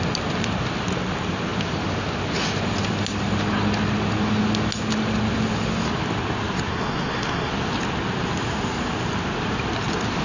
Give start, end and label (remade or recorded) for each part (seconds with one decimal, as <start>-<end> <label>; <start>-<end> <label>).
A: 0.0-6.7 recorded; 6.7-7.5 remade; 7.5-10.2 recorded